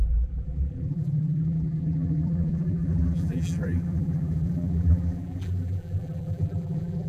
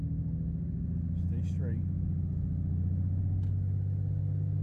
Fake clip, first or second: first